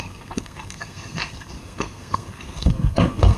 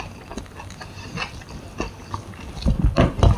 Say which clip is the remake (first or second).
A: first